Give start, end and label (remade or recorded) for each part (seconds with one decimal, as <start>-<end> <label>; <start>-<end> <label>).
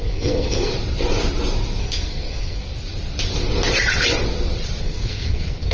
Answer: 0.0-0.7 remade; 0.7-1.8 recorded; 1.8-2.7 remade; 2.7-4.8 recorded; 4.8-5.7 remade